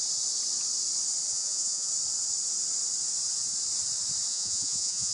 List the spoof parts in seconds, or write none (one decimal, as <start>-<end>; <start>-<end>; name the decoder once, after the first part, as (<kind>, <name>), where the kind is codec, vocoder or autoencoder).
1.3-1.9 (vocoder, Vocos); 4.3-5.1